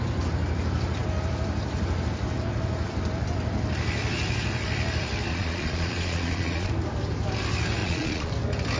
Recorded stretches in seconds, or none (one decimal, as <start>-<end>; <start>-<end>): 0.0-5.3; 6.7-7.8; 8.3-8.8